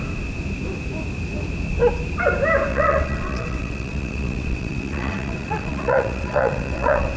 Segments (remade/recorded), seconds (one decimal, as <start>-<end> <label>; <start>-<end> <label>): 0.0-2.7 recorded; 2.7-7.2 remade